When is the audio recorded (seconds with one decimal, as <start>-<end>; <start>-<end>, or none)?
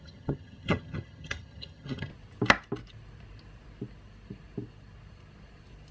2.1-5.9